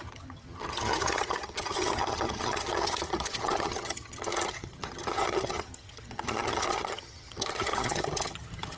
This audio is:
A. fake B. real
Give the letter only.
A